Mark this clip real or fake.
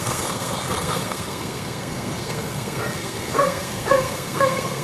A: fake